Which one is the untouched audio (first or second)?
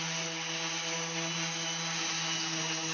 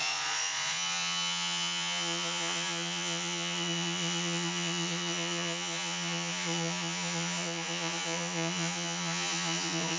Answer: first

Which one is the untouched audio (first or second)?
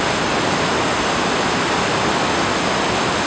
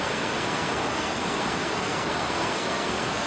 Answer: first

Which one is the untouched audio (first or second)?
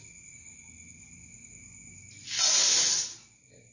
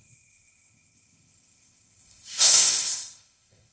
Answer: first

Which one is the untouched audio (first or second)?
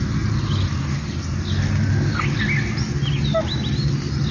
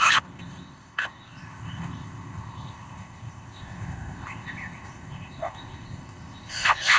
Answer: first